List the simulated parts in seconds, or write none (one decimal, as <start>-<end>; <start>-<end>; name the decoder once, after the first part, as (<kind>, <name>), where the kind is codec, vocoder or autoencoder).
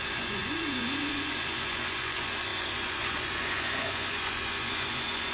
0.0-5.3 (vocoder, Vocos)